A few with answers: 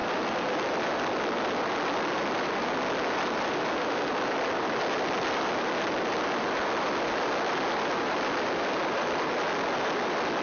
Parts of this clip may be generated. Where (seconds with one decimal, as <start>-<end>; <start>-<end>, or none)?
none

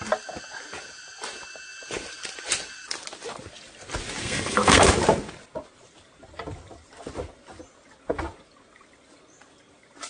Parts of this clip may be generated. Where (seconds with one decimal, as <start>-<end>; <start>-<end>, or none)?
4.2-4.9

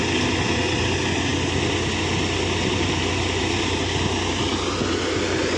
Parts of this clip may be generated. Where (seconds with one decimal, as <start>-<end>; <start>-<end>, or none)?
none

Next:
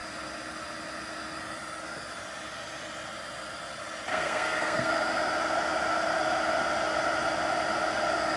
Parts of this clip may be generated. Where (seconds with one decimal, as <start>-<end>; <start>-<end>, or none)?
4.1-4.9